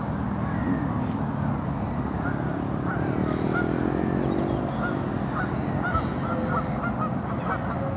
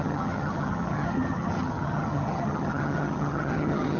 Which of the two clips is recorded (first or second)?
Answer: first